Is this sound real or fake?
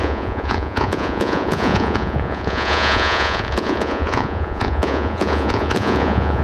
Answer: fake